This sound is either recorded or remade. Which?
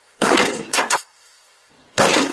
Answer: remade